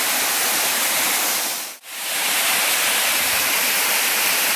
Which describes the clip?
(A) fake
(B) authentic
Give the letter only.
A